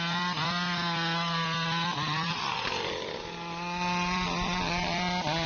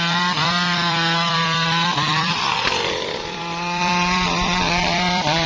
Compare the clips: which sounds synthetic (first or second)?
second